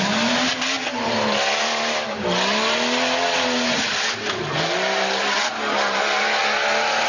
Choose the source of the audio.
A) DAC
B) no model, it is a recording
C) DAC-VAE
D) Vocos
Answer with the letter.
B